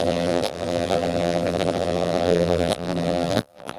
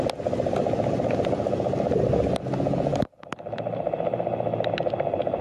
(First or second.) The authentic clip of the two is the second